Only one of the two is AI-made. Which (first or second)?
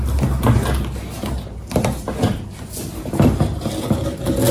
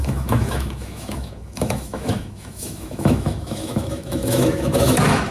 second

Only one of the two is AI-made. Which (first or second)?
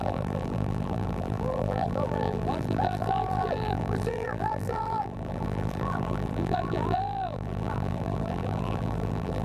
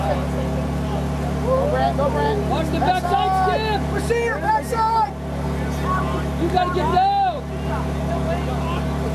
first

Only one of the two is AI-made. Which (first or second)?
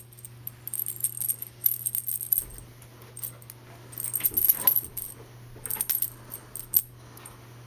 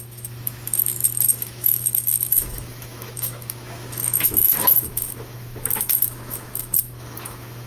second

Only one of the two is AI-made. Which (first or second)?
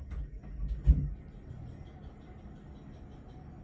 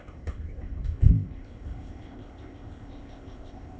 second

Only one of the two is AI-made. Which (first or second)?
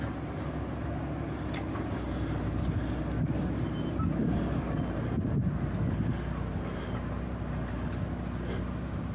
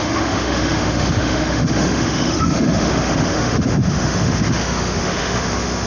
second